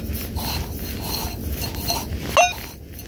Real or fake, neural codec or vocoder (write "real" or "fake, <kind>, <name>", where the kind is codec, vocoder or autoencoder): real